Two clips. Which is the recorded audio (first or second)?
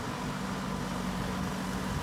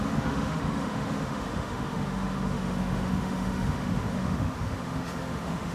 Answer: first